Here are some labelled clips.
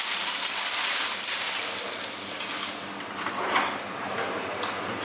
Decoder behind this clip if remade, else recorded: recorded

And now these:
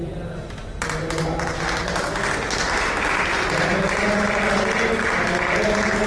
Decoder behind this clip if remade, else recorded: recorded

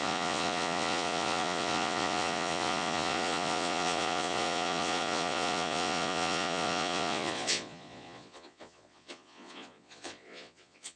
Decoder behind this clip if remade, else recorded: remade, vocoder, Vocos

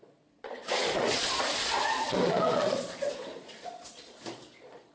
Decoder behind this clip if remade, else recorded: remade, vocoder, Vocos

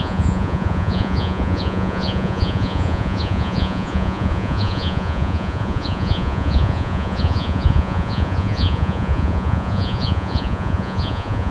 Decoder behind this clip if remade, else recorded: remade, vocoder, Vocos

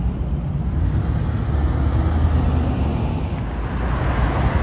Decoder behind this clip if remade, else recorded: recorded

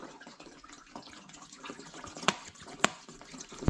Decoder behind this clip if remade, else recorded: remade, vocoder, Vocos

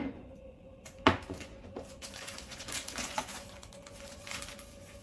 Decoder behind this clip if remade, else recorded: remade, vocoder, Vocos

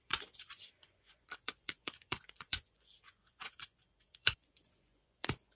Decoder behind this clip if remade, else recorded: remade, vocoder, Vocos